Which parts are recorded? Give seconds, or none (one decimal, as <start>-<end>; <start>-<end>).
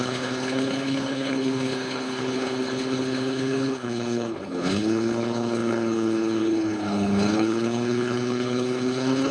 none